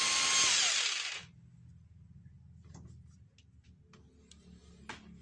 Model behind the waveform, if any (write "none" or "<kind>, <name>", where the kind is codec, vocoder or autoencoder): none